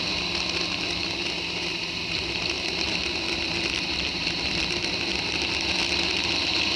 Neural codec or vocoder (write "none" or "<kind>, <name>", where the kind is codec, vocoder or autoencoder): none